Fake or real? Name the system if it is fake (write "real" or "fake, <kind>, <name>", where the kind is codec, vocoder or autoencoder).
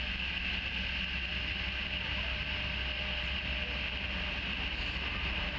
real